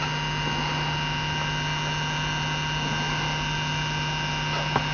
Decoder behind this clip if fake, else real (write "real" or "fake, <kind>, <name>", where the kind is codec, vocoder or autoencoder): real